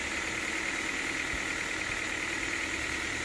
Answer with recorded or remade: recorded